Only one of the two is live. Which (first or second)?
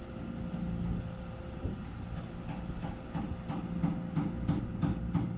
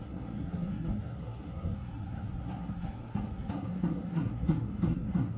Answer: first